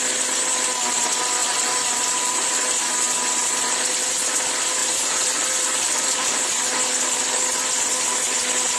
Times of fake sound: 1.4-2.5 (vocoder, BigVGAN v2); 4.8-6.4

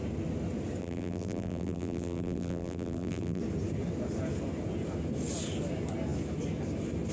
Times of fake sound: 0.8-3.4 (vocoder, BigVGAN v2)